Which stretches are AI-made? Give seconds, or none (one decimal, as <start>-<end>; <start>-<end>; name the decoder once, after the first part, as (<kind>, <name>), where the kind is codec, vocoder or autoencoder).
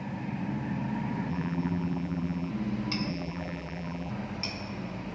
1.3-2.5 (vocoder, BigVGAN v2); 3.1-4.1